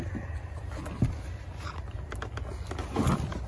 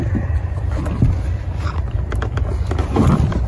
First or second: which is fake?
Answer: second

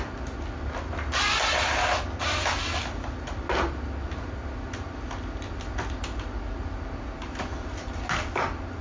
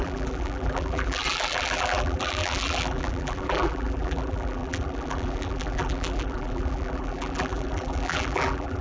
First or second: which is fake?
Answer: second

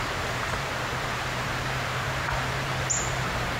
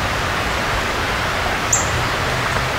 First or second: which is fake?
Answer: first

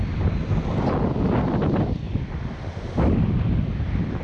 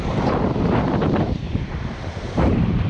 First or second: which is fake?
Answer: second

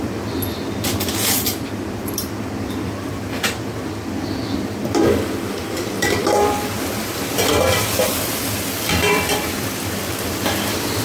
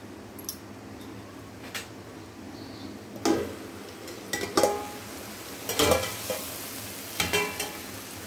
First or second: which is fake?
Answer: first